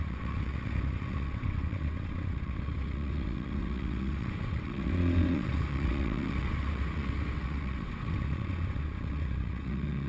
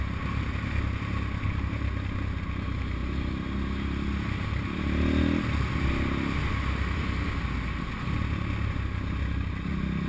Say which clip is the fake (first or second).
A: first